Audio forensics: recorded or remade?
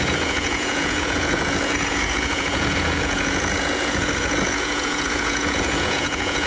remade